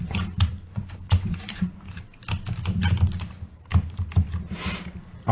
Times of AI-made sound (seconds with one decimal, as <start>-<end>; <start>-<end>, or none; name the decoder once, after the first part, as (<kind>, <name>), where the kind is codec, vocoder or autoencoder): 0.7-2.0 (vocoder, Vocos)

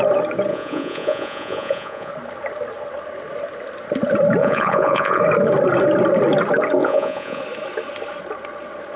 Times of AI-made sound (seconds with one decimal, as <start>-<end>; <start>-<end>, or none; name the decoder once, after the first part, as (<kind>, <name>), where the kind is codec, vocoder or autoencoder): 0.5-2.1 (vocoder, Vocos); 4.4-5.2; 6.8-7.4